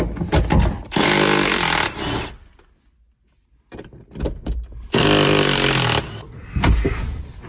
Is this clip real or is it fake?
real